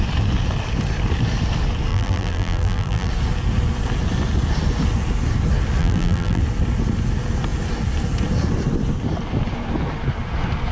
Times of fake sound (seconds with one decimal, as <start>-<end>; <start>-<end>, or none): 1.9-3.1; 5.8-6.4